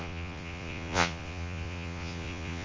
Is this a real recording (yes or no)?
no